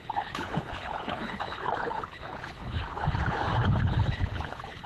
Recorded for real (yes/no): no